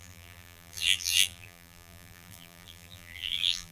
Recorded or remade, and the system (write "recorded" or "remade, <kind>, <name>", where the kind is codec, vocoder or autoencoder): remade, vocoder, BigVGAN v2